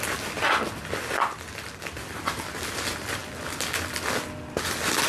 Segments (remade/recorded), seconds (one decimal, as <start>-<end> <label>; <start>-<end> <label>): 0.0-5.1 recorded